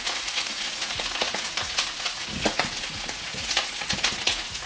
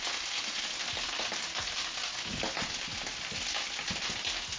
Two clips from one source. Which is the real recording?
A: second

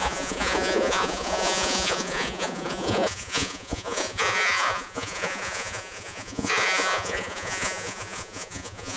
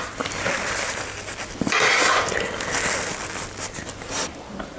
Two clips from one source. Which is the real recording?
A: second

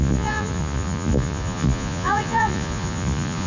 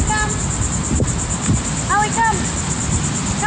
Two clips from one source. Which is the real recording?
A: second